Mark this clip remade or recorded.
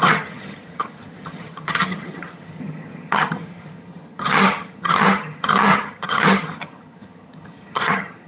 remade